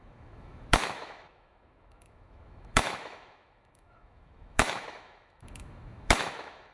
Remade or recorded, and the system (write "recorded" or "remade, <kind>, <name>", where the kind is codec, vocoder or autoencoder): remade, autoencoder, DAC-VAE